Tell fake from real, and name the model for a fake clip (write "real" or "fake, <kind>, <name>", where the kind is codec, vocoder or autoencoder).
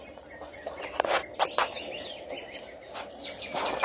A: real